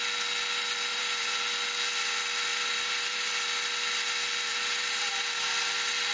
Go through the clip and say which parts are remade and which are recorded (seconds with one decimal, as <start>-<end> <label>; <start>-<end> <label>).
0.0-0.9 recorded; 0.9-1.4 remade; 1.4-2.5 recorded; 2.5-3.3 remade; 3.3-4.5 recorded; 4.5-5.1 remade; 5.1-6.1 recorded